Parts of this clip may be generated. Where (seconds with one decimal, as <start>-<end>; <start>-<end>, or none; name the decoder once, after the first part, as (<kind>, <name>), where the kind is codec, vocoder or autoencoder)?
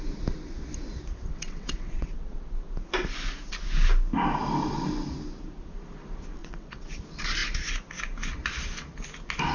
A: 1.3-2.5 (vocoder, WaveNeXt); 6.4-7.0